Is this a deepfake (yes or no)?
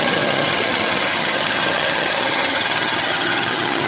yes